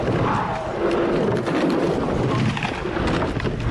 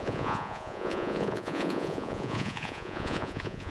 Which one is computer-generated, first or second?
second